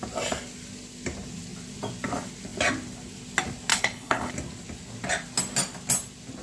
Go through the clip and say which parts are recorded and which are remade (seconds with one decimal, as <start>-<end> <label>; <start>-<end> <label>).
0.0-3.7 recorded; 3.7-4.3 remade; 4.3-6.4 recorded